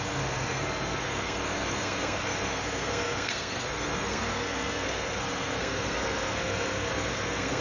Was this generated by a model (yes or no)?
yes